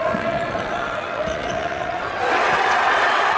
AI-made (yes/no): yes